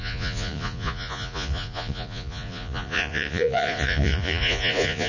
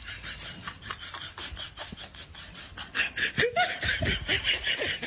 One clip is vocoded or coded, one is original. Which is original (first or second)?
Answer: second